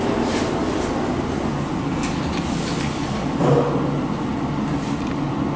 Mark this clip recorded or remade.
recorded